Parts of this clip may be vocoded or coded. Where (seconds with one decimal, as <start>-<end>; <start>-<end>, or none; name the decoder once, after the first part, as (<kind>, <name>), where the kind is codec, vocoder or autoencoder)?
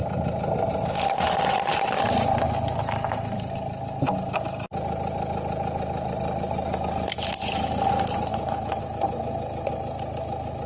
none